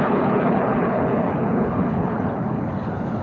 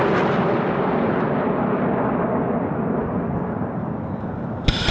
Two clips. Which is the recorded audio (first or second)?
second